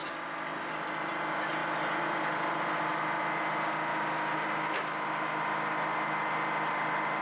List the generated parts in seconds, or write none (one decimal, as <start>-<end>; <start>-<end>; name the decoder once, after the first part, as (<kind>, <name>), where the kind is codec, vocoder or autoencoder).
0.0-0.7 (codec, DAC)